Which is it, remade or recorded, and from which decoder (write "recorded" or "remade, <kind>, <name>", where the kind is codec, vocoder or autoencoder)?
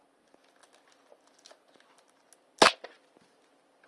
recorded